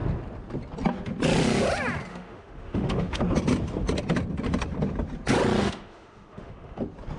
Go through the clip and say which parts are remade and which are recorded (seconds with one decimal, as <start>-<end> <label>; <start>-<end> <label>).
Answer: 0.0-2.1 recorded; 2.1-3.2 remade; 3.2-5.6 recorded; 5.6-6.8 remade; 6.8-7.2 recorded